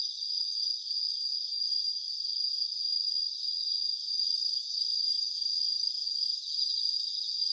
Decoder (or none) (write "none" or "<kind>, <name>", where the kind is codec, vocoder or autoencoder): none